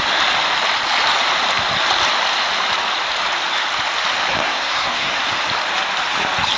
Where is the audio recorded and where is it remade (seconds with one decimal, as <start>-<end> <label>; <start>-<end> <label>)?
0.0-4.4 recorded; 4.4-5.2 remade; 5.2-6.6 recorded